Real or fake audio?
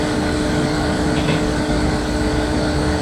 fake